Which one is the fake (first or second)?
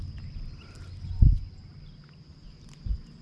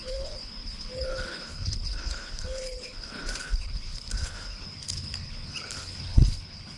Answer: second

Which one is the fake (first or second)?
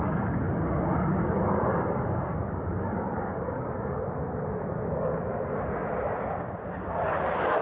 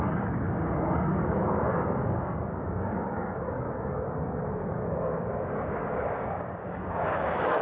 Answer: second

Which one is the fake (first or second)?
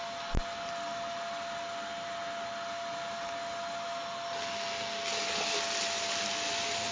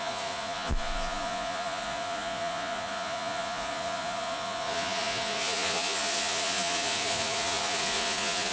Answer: second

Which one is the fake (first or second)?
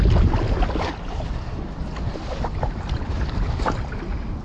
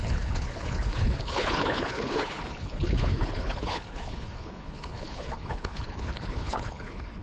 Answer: second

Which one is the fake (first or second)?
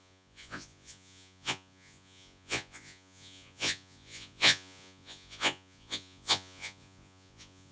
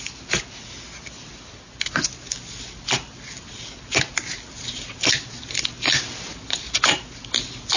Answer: first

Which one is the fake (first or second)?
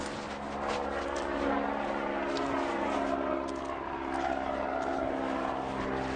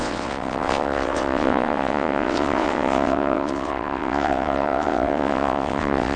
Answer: second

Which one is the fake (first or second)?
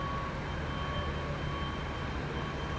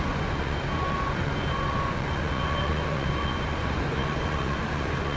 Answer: second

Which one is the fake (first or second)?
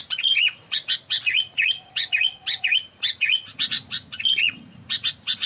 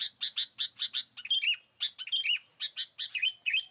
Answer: first